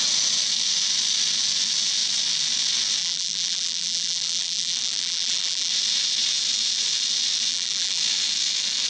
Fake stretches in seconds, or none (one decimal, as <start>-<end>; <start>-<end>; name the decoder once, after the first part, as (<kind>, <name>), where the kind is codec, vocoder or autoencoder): 3.0-5.7 (vocoder, BigVGAN v2); 7.5-8.0